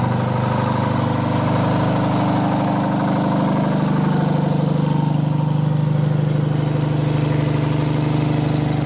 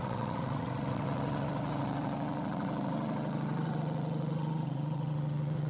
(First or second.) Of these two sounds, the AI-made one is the second